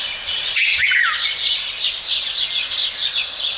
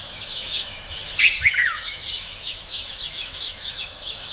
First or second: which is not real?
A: second